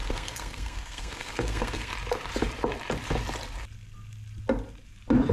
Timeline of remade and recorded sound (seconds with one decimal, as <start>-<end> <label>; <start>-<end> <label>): 0.0-1.9 remade; 1.9-5.3 recorded